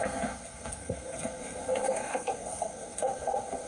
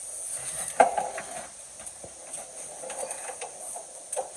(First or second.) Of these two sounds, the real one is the second